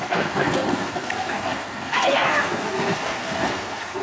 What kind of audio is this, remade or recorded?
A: remade